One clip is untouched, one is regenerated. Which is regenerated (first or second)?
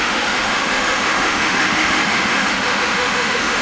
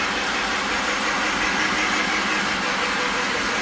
first